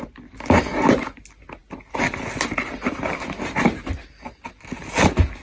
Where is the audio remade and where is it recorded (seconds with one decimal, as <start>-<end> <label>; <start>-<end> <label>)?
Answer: 0.0-5.4 recorded